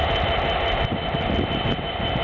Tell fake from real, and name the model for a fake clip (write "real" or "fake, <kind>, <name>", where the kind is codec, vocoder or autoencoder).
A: real